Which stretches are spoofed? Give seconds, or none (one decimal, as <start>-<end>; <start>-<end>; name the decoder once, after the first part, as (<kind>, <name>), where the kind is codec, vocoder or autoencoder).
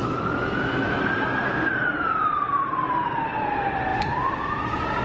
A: 0.0-1.0 (autoencoder, DAC-VAE)